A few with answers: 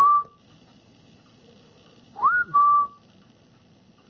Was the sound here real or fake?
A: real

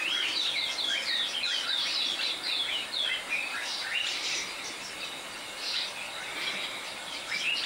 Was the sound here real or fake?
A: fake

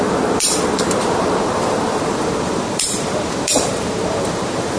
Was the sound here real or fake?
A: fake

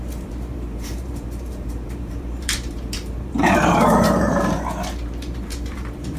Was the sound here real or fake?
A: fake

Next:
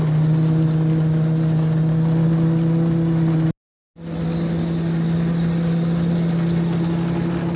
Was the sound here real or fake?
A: real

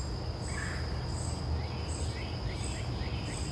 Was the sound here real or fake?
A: real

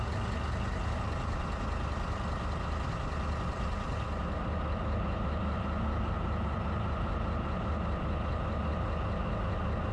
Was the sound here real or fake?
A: real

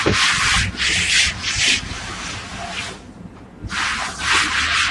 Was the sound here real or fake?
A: fake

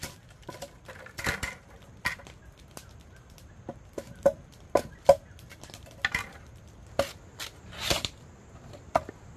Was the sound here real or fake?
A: real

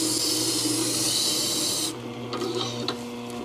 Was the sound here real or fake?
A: real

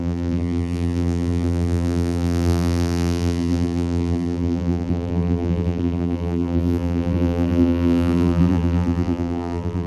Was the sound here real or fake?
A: fake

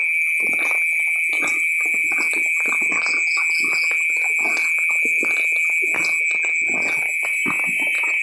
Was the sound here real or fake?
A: real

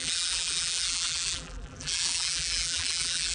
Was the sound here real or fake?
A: fake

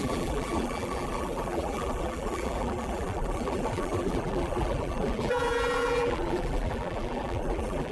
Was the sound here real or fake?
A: fake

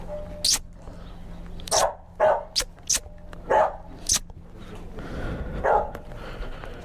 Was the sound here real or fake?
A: real